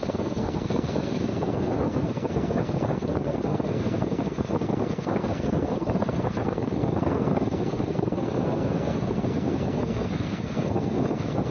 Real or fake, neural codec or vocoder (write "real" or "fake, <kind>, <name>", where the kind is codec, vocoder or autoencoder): fake, codec, SNAC